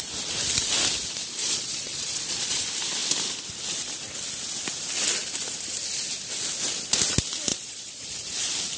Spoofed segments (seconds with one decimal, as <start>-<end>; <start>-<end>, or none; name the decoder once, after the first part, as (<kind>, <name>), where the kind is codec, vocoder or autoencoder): 1.4-2.6 (vocoder, Vocos); 7.5-8.2